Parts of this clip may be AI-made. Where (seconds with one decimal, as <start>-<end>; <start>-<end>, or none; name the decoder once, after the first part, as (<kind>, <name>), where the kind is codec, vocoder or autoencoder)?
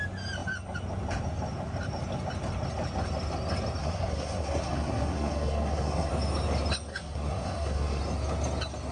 3.8-6.1 (codec, SNAC); 6.9-8.0